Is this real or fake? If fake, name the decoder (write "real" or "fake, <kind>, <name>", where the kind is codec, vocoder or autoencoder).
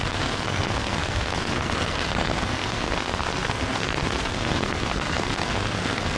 fake, codec, SNAC